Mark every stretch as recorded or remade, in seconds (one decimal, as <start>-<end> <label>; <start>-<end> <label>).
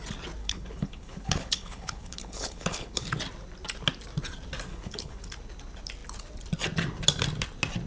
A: 0.0-0.4 recorded; 0.4-3.1 remade; 3.1-4.7 recorded; 4.7-5.2 remade; 5.2-7.9 recorded